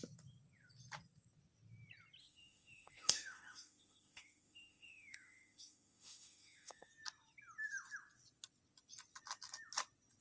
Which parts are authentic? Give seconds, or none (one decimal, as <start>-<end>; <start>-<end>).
0.0-2.2; 6.9-10.2